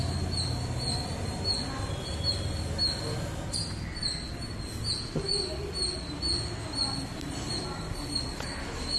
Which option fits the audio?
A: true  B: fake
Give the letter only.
A